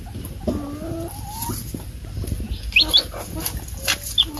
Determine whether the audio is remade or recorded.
recorded